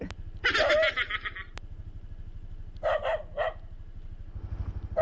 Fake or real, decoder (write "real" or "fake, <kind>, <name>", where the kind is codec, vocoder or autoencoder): real